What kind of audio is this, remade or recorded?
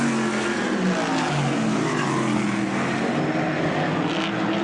recorded